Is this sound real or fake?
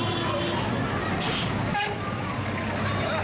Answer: real